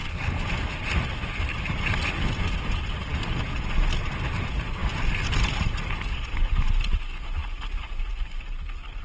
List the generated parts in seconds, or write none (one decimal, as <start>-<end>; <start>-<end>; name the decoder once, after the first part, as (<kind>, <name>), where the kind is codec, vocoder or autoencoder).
none